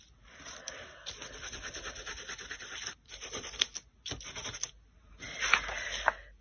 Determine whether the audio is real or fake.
real